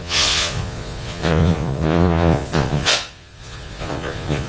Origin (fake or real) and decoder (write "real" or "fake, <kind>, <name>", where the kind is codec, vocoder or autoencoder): fake, vocoder, Vocos